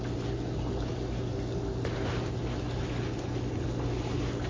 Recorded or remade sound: recorded